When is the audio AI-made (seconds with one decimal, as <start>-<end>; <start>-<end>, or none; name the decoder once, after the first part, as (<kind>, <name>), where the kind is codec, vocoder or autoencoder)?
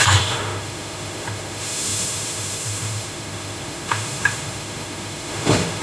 0.0-5.8 (autoencoder, DAC-VAE)